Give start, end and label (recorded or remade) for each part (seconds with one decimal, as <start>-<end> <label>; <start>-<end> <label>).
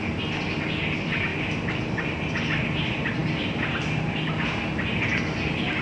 0.0-1.3 recorded; 1.3-1.8 remade; 1.8-5.8 recorded